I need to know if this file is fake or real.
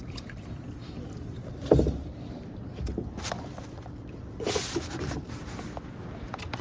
real